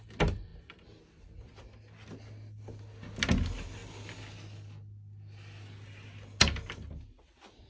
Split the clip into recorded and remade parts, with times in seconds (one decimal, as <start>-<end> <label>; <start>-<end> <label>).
0.0-7.7 recorded